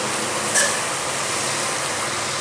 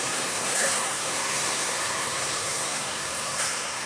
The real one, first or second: first